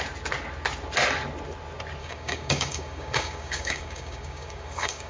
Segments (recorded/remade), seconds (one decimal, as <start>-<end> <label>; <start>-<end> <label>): 0.0-2.0 recorded; 2.0-5.1 remade